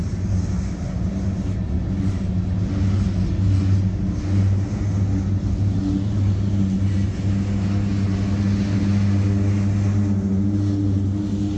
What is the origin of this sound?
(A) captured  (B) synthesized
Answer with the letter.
A